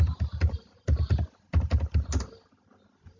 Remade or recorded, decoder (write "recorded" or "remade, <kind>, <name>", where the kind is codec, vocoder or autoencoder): recorded